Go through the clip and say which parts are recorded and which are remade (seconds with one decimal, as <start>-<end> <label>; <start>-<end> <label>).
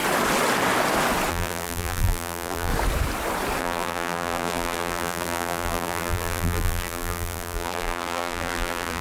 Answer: 0.0-1.3 recorded; 1.3-2.7 remade; 2.7-3.6 recorded; 3.6-9.0 remade